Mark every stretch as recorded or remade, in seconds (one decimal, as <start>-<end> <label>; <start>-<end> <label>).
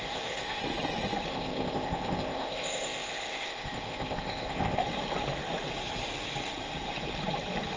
0.0-0.6 remade; 0.6-1.3 recorded; 1.3-4.8 remade; 4.8-7.8 recorded